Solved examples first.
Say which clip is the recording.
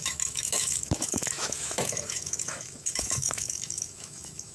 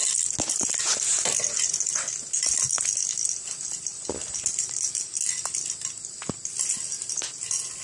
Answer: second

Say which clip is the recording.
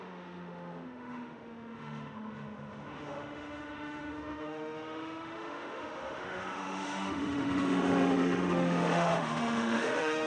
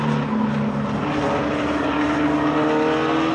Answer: second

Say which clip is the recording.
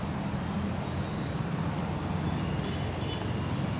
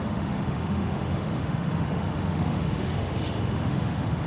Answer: first